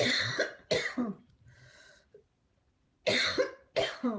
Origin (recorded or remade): recorded